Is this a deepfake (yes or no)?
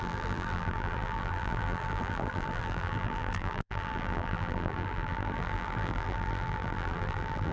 yes